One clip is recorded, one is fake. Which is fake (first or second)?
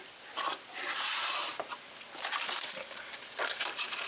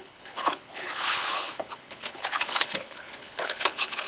second